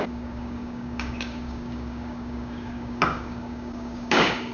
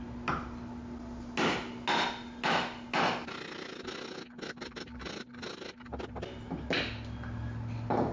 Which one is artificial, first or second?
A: first